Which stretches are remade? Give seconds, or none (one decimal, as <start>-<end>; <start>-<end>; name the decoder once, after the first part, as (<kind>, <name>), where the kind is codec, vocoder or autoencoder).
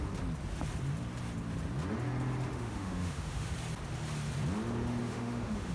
2.5-3.5 (autoencoder, DAC-VAE); 5.0-5.7